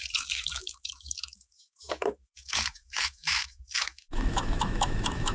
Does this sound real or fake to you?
fake